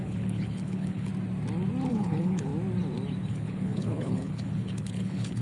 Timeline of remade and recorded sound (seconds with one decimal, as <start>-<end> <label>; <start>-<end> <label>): 0.0-1.1 remade; 1.1-1.9 recorded; 1.9-2.5 remade; 2.5-3.3 recorded; 3.3-5.4 remade